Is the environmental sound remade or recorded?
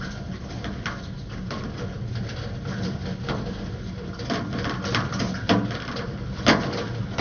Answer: recorded